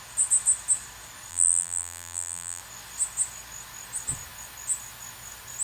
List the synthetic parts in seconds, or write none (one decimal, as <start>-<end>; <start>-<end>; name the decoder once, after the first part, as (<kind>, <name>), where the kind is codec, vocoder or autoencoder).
1.3-2.6 (vocoder, BigVGAN v2)